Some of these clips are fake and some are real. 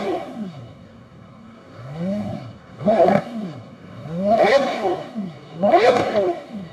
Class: fake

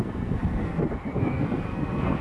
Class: fake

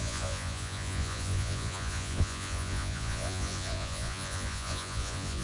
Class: fake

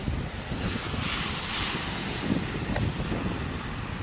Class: real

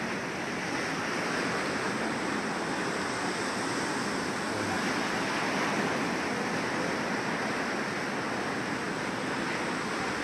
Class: real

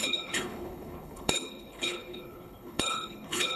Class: fake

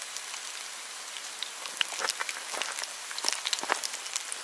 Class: real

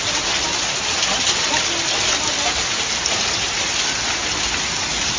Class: real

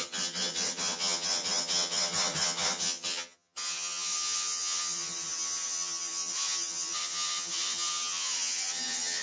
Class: fake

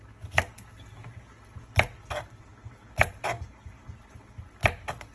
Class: real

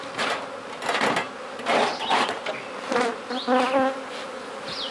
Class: real